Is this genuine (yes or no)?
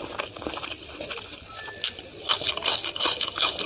yes